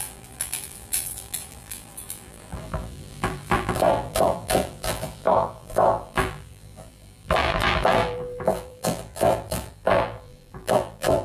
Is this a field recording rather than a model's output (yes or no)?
no